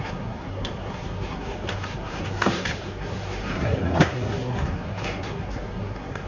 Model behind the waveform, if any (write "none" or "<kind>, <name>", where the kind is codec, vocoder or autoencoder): codec, SNAC